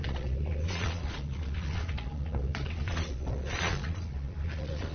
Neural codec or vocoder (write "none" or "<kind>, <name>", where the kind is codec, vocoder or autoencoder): vocoder, Vocos